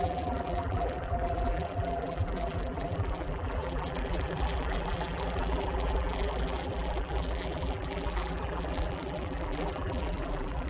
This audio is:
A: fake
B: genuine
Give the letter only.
A